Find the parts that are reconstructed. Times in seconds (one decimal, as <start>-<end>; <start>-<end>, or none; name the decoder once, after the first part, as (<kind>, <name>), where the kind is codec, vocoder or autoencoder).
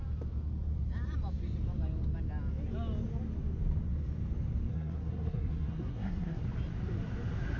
4.7-6.4 (codec, SNAC)